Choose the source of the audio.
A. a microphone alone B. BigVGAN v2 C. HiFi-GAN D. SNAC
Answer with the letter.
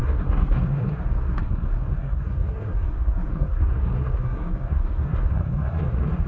D